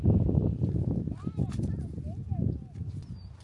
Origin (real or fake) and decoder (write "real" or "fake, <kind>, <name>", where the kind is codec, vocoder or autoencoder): real